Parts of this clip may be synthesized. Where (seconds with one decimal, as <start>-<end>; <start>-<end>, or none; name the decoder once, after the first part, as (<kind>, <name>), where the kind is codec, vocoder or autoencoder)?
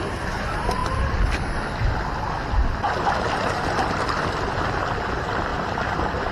0.8-4.6 (vocoder, BigVGAN v2); 5.5-6.3